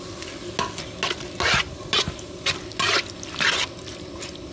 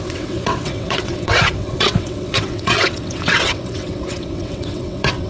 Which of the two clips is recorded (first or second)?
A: first